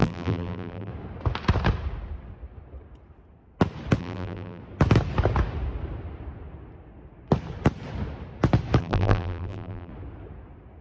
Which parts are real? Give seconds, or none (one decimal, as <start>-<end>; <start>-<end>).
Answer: 0.9-4.0; 4.6-8.8; 9.9-10.8